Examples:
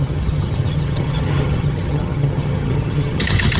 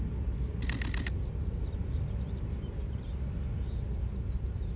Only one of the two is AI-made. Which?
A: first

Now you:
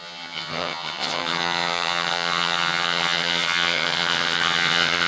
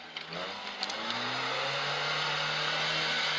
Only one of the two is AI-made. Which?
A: first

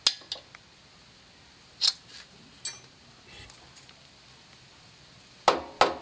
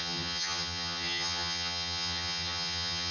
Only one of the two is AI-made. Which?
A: second